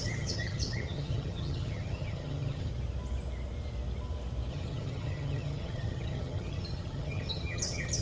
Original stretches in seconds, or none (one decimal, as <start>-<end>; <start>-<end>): 2.7-4.5